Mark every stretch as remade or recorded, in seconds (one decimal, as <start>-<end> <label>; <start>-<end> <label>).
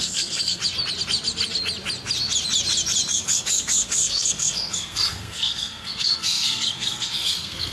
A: 0.0-0.6 remade; 0.6-3.1 recorded; 3.1-7.7 remade